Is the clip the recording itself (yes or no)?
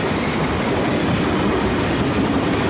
yes